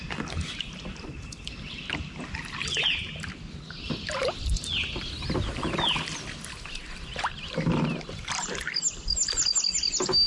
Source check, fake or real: real